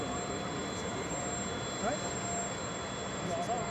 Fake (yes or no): no